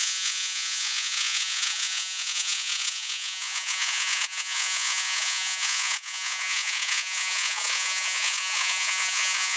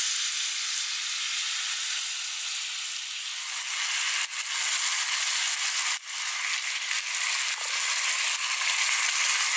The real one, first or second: second